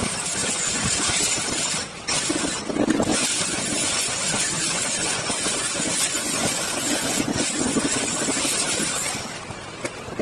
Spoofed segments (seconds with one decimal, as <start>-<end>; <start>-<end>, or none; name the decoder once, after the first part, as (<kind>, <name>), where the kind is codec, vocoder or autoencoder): 0.4-0.9 (vocoder, Vocos); 3.1-8.2